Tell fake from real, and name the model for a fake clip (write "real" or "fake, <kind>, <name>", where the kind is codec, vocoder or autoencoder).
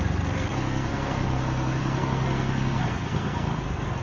fake, codec, SNAC